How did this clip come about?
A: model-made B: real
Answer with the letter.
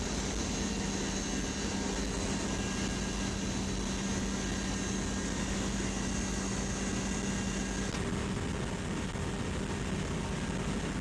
B